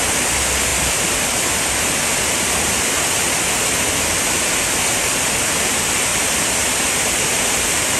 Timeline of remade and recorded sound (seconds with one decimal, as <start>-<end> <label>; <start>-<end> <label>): 0.0-8.0 recorded